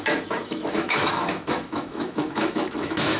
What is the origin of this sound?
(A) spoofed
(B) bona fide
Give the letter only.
A